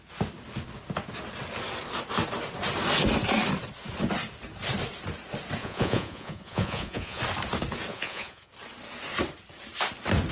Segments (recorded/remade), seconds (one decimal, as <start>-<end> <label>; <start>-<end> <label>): 0.0-5.6 recorded; 5.6-7.2 remade; 7.2-7.9 recorded; 7.9-8.5 remade; 8.5-10.3 recorded